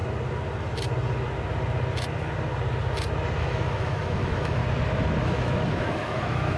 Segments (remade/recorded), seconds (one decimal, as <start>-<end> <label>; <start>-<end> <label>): 0.0-3.4 recorded; 3.4-4.6 remade; 4.6-5.2 recorded; 5.2-6.6 remade